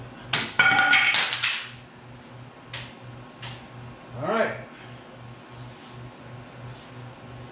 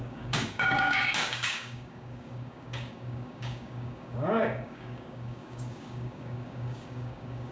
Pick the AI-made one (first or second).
second